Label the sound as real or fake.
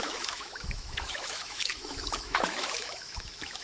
fake